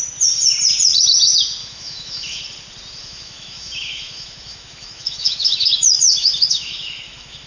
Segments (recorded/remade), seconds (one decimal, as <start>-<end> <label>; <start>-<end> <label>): 0.0-1.6 recorded; 1.6-2.4 remade; 2.4-3.0 recorded; 3.0-7.5 remade